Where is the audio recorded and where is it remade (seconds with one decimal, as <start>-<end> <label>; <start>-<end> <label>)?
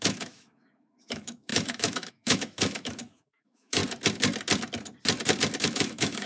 0.0-3.8 remade; 3.8-5.6 recorded; 5.6-6.3 remade